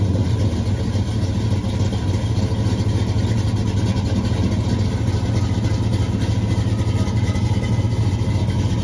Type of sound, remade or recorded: recorded